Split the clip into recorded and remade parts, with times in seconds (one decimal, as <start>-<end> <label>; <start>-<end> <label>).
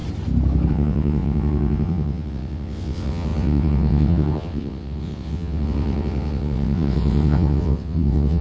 0.0-0.7 recorded; 0.7-8.4 remade